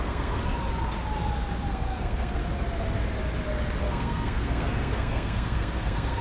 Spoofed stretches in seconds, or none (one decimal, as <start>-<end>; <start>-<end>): 0.0-0.4; 1.7-2.4; 3.8-6.2